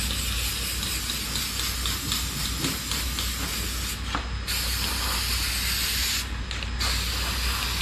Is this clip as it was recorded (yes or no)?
yes